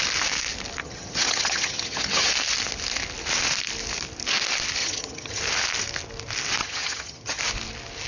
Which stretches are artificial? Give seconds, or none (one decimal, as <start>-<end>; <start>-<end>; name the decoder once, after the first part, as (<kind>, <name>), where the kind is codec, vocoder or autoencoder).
0.8-2.3 (vocoder, HiFi-GAN); 4.8-5.4; 6.6-7.4